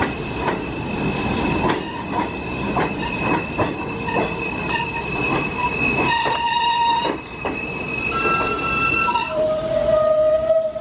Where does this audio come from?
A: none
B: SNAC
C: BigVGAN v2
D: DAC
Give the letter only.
C